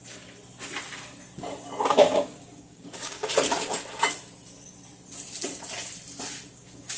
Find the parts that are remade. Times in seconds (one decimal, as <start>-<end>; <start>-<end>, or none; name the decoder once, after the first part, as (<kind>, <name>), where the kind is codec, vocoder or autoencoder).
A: 1.9-3.3 (codec, DAC); 6.5-7.0